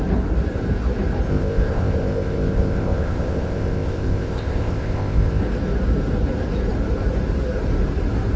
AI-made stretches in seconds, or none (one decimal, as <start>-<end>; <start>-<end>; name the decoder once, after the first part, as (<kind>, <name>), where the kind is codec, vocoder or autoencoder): 1.3-5.4 (codec, ZipCodec)